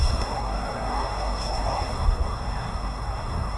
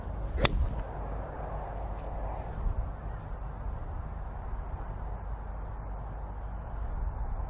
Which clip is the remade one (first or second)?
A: first